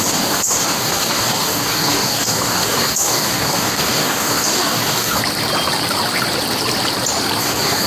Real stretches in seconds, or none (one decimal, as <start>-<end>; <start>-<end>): 5.2-7.4